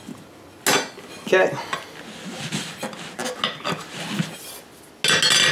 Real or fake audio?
real